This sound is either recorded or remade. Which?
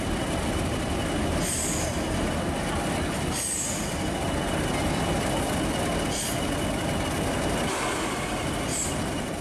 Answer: recorded